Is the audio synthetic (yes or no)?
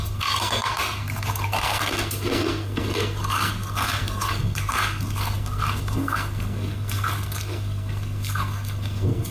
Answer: yes